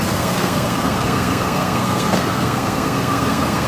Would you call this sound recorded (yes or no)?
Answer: no